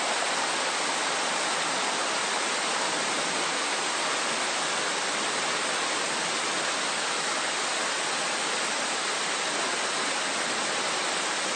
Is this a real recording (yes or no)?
yes